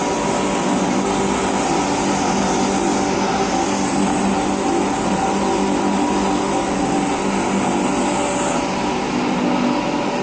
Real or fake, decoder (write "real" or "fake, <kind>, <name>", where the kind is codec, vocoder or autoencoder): real